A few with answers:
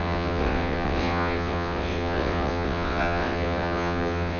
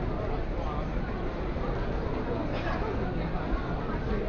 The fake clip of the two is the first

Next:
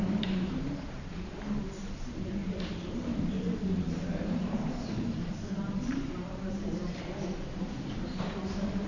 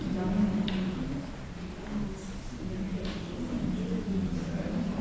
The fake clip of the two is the first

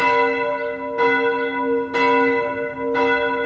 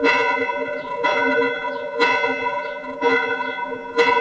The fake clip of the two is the second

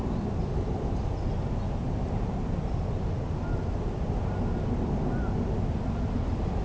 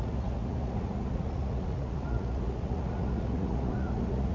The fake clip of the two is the second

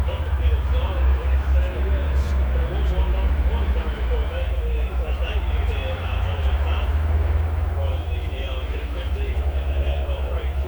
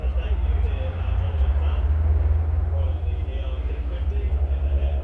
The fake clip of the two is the first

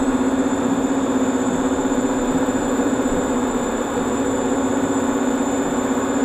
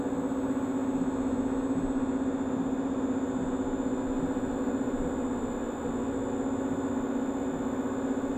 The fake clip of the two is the first